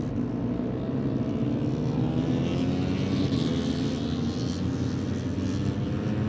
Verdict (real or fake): real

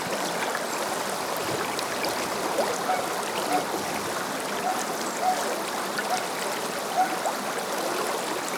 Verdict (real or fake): real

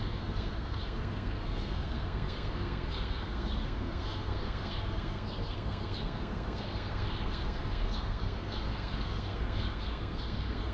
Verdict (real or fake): fake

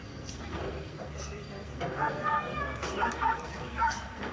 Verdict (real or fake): fake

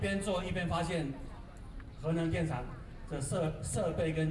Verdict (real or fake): real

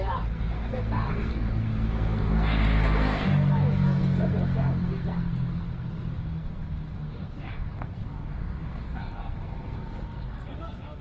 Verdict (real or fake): fake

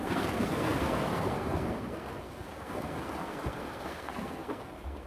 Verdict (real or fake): fake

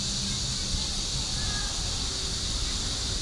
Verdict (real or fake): real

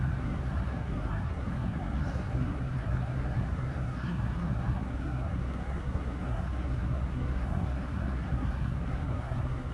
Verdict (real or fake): fake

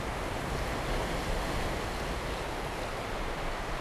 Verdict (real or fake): real